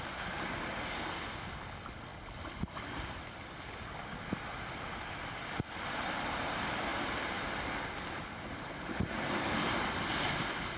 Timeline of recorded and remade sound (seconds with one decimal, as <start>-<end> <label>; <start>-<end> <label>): 0.0-10.8 recorded